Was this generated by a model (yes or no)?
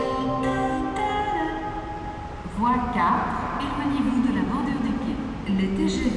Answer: no